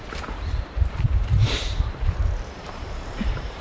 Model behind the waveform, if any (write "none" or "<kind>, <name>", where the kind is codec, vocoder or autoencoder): vocoder, BigVGAN v2